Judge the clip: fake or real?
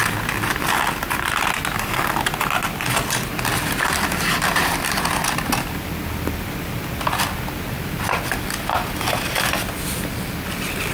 real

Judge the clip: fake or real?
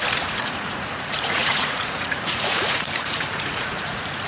fake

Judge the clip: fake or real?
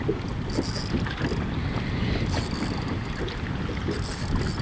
real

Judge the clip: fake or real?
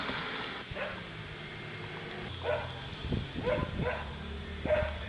real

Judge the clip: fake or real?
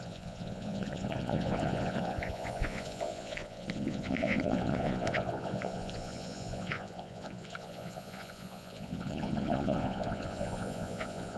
fake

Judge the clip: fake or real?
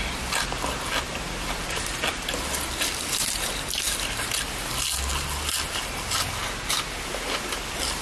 real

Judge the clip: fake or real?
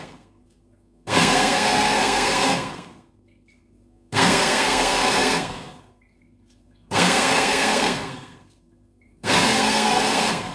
fake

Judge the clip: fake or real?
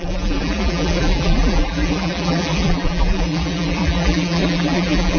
fake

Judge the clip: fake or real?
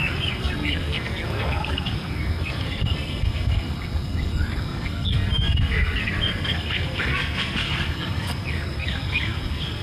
fake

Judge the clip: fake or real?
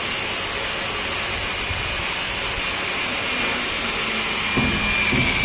real